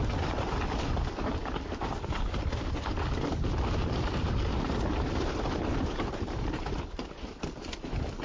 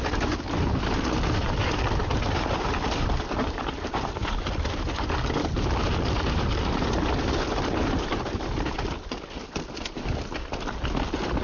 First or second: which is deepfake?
first